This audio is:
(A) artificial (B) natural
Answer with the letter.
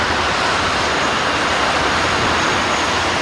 B